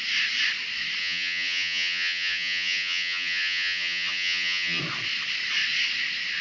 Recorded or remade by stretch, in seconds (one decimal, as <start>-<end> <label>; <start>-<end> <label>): 0.0-1.0 recorded; 1.0-4.8 remade; 4.8-6.4 recorded